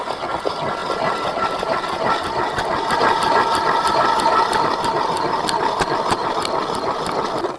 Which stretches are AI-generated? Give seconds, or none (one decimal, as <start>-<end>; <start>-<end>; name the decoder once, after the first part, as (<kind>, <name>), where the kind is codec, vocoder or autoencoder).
none